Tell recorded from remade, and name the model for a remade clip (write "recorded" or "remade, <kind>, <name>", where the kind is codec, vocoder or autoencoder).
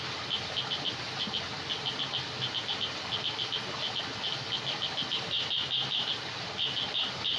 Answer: recorded